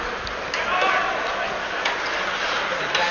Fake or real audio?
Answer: real